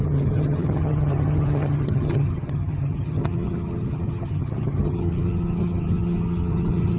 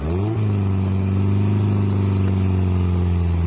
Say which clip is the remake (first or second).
first